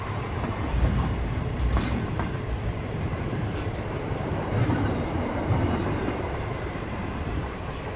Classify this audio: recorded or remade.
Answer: remade